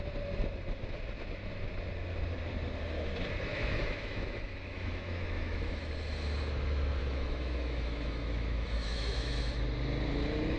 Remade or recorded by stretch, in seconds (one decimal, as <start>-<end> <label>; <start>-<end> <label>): 0.0-3.5 recorded; 3.5-5.9 remade; 5.9-7.0 recorded; 7.0-9.6 remade; 9.6-10.6 recorded